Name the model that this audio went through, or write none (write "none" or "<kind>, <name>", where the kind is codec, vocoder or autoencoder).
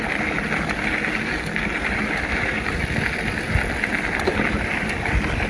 none